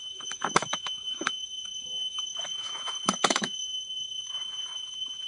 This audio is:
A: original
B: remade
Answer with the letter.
B